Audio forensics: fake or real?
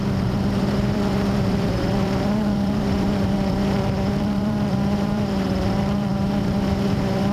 fake